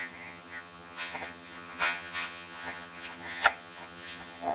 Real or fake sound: fake